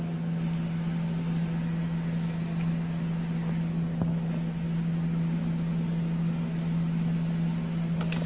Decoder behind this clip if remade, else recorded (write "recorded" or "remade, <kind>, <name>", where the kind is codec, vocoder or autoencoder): recorded